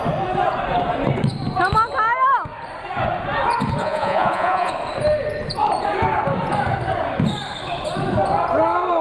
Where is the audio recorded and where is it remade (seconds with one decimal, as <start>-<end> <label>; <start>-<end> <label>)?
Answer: 0.0-3.8 recorded; 3.8-4.7 remade; 4.7-9.0 recorded